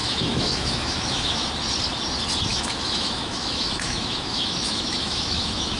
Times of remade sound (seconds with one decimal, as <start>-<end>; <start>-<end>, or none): 0.0-1.5; 2.5-5.8